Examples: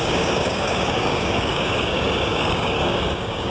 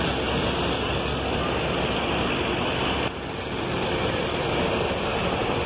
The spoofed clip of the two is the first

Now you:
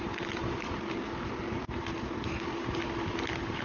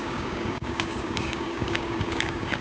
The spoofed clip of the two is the second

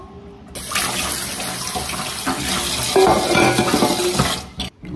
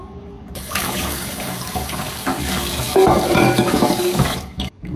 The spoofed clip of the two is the second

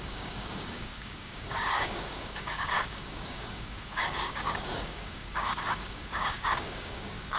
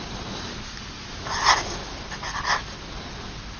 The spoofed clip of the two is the first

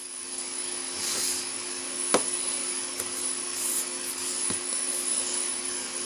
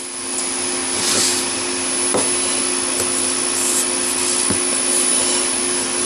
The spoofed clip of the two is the first